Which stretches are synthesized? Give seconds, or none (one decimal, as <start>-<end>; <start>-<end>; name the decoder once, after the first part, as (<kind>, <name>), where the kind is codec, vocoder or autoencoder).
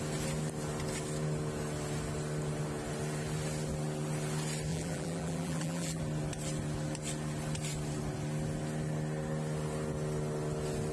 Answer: 4.7-6.0 (vocoder, BigVGAN v2)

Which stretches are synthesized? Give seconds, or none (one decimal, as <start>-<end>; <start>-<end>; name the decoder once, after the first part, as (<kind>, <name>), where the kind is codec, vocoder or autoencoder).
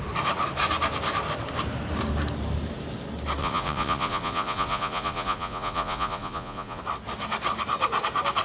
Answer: 3.4-6.8 (vocoder, Vocos)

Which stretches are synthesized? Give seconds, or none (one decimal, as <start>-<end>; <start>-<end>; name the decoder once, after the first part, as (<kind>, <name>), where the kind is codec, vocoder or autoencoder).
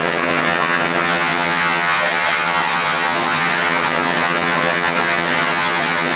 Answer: 0.0-6.2 (vocoder, HiFi-GAN)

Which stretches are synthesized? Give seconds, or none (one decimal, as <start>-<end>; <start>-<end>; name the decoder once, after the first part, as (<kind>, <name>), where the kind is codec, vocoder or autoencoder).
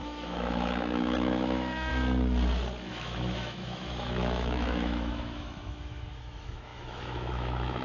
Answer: 0.0-1.9 (autoencoder, DAC-VAE); 2.9-7.8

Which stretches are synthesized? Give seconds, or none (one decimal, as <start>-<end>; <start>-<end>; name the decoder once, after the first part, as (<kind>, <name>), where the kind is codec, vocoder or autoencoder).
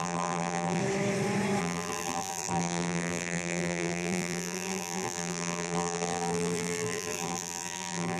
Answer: 0.0-0.8 (vocoder, BigVGAN v2); 1.6-8.2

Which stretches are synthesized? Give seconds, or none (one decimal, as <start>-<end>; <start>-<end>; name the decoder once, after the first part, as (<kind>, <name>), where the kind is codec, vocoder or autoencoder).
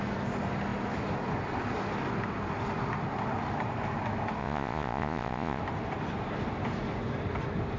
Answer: 4.4-5.6 (vocoder, Vocos)